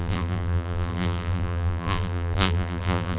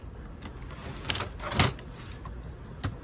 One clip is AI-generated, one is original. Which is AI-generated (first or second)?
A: first